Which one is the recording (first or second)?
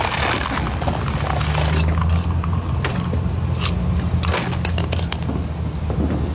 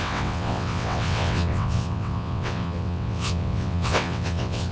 first